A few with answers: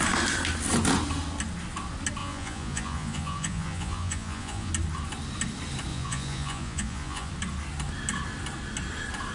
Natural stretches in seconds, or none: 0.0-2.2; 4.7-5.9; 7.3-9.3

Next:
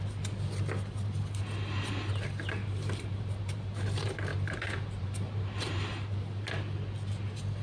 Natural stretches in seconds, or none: 0.0-2.6; 3.7-4.3; 6.5-7.6

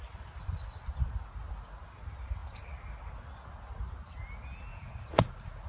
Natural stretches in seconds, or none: 0.0-4.7

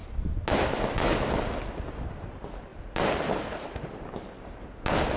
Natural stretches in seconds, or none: 0.0-5.2